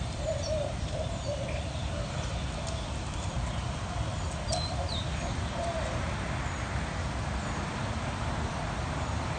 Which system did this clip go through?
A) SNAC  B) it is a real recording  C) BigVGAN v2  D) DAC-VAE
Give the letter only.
C